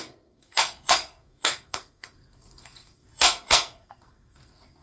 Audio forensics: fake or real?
fake